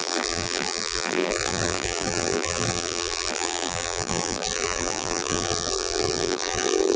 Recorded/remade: remade